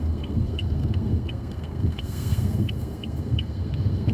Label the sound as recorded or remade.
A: remade